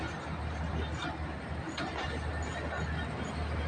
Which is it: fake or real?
real